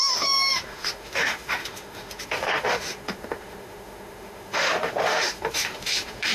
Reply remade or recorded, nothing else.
remade